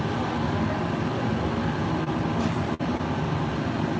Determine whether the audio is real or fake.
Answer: real